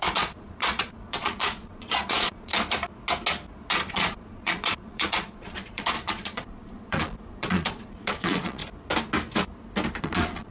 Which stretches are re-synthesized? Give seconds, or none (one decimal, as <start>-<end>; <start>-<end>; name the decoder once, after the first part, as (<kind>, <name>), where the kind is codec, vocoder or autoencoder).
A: 0.0-2.5 (vocoder, Vocos); 3.9-8.6; 10.0-10.5